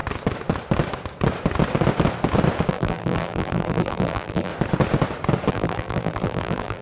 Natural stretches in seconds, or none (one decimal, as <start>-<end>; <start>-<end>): 0.0-2.7; 4.5-5.5